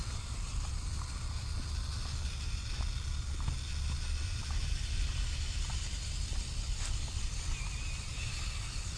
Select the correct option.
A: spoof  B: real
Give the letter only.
B